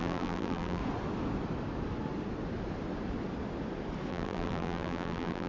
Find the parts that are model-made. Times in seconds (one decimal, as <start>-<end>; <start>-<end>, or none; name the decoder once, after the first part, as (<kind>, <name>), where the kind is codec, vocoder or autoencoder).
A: 0.0-0.8 (vocoder, BigVGAN v2); 4.1-5.5